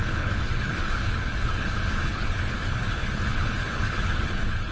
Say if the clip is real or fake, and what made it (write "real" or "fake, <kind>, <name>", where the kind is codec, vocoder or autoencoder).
fake, codec, HILCodec